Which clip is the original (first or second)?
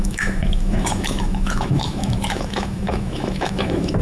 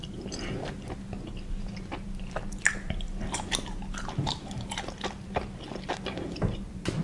second